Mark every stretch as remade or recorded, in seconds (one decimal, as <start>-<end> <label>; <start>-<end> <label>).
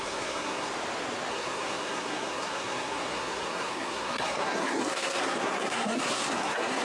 0.0-0.7 remade; 0.7-1.3 recorded; 1.3-6.8 remade